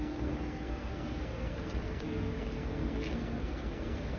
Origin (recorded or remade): remade